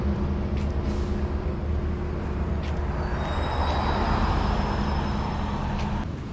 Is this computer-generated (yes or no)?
no